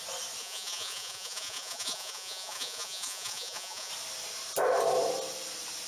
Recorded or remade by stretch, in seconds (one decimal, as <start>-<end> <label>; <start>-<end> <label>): 0.0-0.4 recorded; 0.4-3.9 remade; 3.9-5.9 recorded